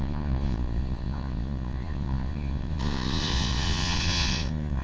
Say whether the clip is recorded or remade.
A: remade